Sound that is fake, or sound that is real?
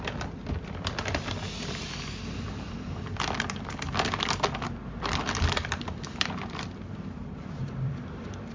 fake